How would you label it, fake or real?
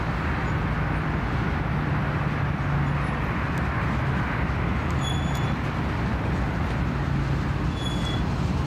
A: real